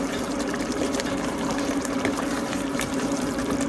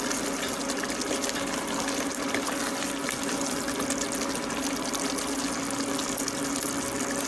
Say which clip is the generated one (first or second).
first